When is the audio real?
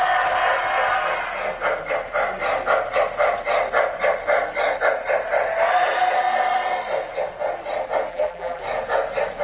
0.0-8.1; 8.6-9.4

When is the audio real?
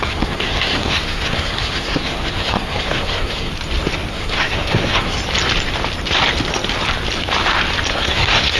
3.5-4.1; 5.2-7.9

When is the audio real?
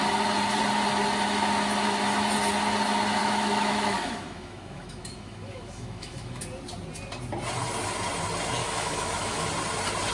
0.0-3.2; 6.4-8.6; 9.5-10.1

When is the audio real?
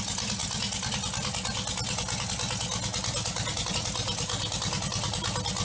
0.0-5.6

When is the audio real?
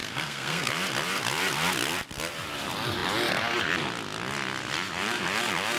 0.7-5.8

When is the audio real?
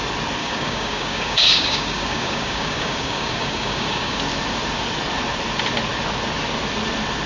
0.0-0.4; 4.2-7.3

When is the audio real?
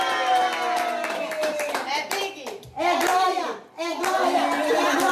0.0-1.4; 2.2-3.1; 4.0-5.1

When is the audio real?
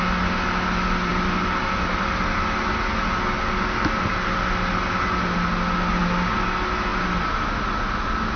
0.0-8.4